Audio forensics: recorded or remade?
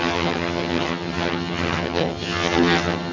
remade